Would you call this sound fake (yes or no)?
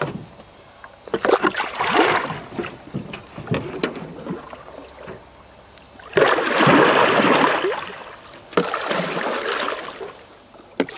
no